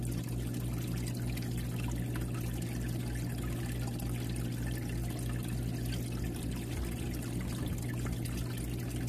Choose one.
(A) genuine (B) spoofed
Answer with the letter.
A